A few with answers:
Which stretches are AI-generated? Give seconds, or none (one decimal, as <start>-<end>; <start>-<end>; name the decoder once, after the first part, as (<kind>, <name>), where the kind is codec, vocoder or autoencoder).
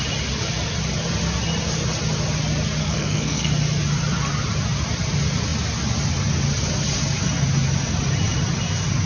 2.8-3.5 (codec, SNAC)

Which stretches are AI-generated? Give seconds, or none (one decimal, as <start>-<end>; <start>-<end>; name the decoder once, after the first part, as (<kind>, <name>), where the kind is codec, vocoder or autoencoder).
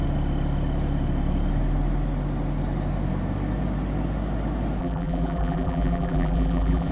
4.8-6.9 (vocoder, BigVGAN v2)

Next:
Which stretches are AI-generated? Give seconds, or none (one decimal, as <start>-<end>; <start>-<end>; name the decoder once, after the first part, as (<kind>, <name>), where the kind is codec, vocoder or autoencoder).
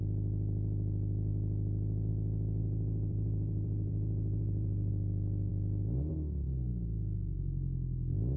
2.6-4.9 (vocoder, BigVGAN v2)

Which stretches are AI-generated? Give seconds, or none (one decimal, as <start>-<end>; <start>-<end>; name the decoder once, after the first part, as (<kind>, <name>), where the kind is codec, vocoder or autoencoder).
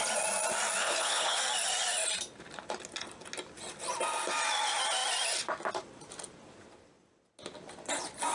0.8-1.4 (codec, HILCodec)